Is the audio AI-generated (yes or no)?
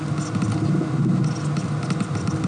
no